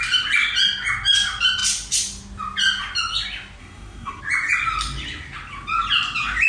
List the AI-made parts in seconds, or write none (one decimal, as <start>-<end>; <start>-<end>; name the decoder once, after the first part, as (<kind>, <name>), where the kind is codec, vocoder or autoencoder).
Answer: 3.6-4.2 (codec, SNAC)